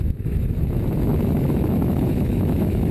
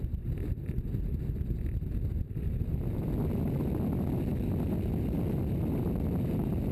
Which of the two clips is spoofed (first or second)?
first